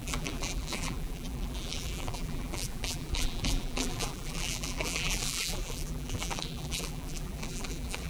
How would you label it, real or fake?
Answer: fake